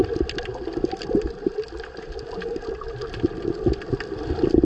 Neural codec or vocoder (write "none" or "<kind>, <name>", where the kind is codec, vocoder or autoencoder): none